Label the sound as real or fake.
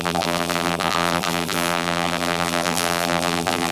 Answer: fake